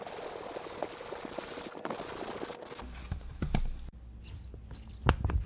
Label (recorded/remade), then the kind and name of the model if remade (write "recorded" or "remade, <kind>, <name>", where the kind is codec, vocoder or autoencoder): recorded